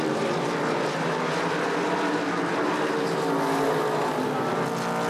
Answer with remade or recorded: recorded